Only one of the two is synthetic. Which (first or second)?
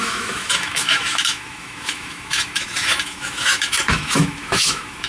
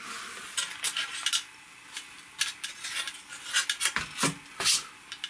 first